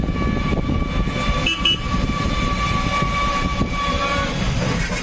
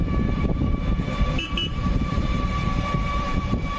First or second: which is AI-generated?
second